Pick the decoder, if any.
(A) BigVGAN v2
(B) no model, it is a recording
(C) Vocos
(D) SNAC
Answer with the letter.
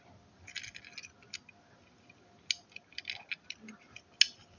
B